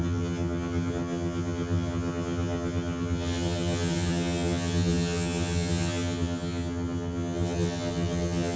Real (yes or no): no